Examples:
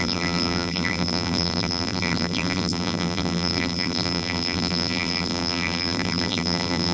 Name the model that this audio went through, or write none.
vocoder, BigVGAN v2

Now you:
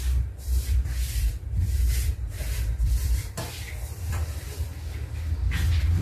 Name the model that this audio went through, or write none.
vocoder, BigVGAN v2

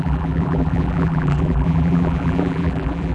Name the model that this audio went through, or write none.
vocoder, BigVGAN v2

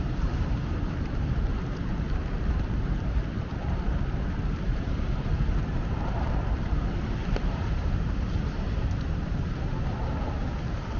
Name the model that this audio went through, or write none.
vocoder, BigVGAN v2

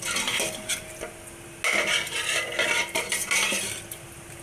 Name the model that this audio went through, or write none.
none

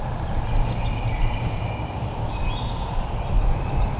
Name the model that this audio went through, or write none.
none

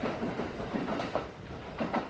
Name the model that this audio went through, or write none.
vocoder, BigVGAN v2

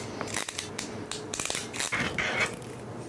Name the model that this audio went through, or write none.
none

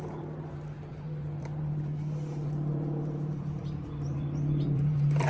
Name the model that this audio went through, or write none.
vocoder, BigVGAN v2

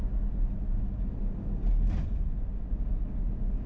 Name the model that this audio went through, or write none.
none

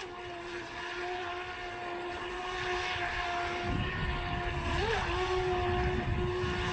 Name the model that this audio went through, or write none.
none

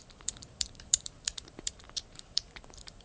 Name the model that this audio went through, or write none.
vocoder, BigVGAN v2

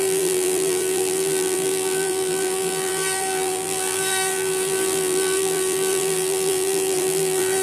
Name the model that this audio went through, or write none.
vocoder, BigVGAN v2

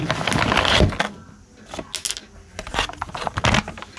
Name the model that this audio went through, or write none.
none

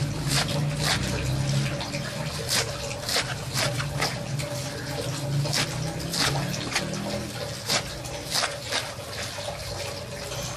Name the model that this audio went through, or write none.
none